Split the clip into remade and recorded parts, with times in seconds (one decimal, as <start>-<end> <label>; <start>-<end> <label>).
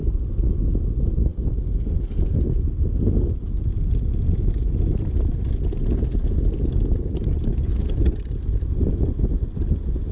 0.0-10.1 recorded